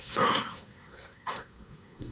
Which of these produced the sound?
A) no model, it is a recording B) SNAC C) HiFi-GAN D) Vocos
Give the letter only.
B